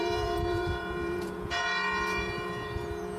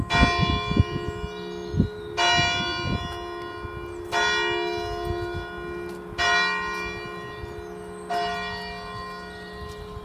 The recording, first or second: second